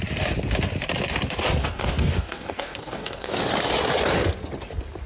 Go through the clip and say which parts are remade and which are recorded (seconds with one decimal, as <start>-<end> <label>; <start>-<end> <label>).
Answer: 0.0-1.6 recorded; 1.6-3.4 remade; 3.4-5.1 recorded